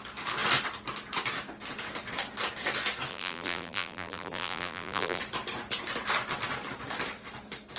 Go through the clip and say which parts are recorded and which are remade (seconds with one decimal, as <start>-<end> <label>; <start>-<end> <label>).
0.0-3.1 recorded; 3.1-5.2 remade; 5.2-7.8 recorded